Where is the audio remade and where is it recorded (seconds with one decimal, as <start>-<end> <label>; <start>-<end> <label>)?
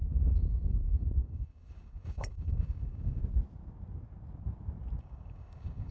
0.0-3.2 remade; 3.2-5.0 recorded; 5.0-5.9 remade